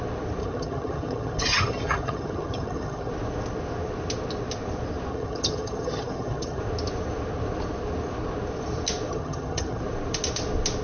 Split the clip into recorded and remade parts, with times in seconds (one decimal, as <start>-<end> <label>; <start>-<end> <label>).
0.0-0.4 recorded; 0.4-3.1 remade; 3.1-5.1 recorded; 5.1-6.6 remade; 6.6-9.1 recorded; 9.1-9.8 remade; 9.8-10.8 recorded